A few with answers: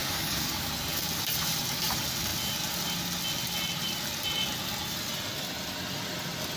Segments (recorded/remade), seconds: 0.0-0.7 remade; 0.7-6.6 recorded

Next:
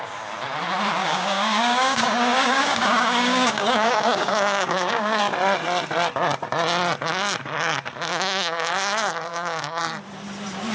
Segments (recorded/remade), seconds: 0.0-1.0 recorded; 1.0-5.2 remade; 5.2-8.1 recorded; 8.1-8.7 remade; 8.7-9.3 recorded; 9.3-9.8 remade; 9.8-10.7 recorded

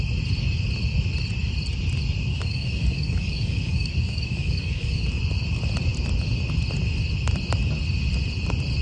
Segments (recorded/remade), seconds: 0.0-2.3 recorded; 2.3-5.2 remade; 5.2-8.8 recorded